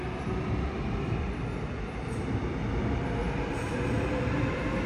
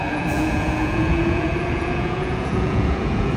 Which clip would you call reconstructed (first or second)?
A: second